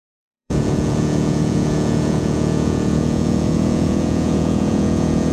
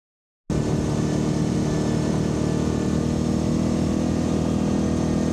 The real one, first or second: second